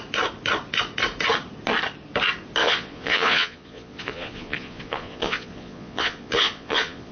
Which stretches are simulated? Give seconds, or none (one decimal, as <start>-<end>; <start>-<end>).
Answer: 2.6-7.1